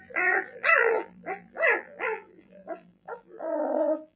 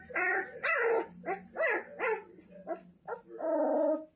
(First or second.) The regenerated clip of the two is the first